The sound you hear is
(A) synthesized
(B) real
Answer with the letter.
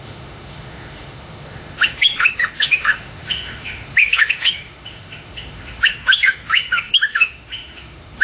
A